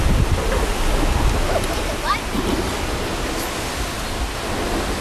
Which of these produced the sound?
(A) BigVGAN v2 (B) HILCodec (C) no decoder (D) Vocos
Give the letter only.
C